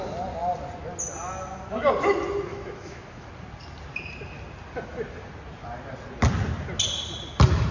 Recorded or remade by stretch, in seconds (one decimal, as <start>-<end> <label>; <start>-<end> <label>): 0.0-2.5 recorded; 2.5-3.3 remade; 3.3-7.7 recorded

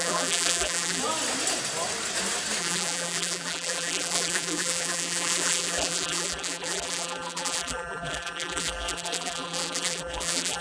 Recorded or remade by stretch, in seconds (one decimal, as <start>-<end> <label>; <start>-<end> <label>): 0.0-1.0 remade; 1.0-2.6 recorded; 2.6-10.6 remade